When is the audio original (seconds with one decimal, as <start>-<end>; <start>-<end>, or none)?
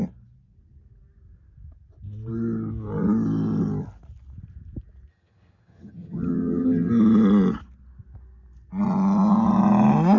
0.0-5.1; 6.9-10.2